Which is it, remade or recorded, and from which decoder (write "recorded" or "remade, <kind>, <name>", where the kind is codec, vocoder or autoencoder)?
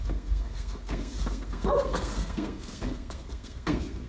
remade, codec, SNAC